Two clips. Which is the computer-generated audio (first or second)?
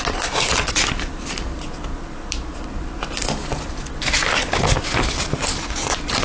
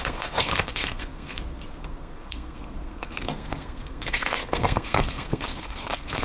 second